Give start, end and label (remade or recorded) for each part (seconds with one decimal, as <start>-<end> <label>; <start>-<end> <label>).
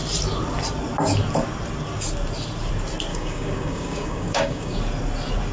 0.0-3.1 recorded; 3.1-4.8 remade; 4.8-5.5 recorded